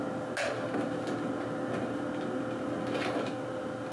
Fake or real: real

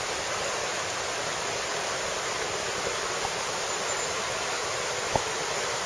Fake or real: real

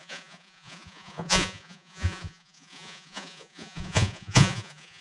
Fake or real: fake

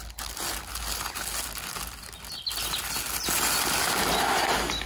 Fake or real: real